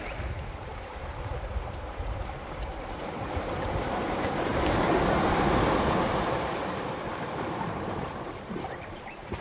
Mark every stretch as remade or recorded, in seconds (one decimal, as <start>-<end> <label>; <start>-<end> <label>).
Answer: 0.0-4.5 remade; 4.5-5.1 recorded; 5.1-9.4 remade